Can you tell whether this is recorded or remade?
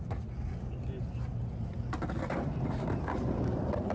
recorded